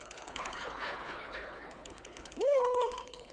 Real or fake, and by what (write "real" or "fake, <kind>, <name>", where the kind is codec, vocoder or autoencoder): fake, codec, HILCodec